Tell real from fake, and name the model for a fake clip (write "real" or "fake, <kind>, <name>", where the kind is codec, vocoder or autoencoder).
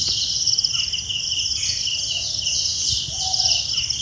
real